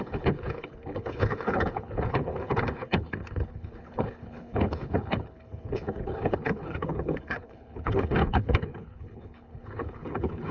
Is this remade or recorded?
remade